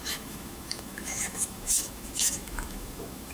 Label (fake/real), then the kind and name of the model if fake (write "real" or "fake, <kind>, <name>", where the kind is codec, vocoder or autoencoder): fake, autoencoder, DAC-VAE